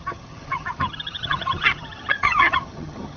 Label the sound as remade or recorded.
remade